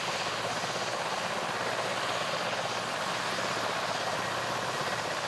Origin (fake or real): real